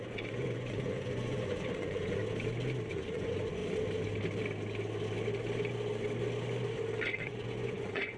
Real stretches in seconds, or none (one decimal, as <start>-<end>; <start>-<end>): 2.2-2.9; 3.6-7.2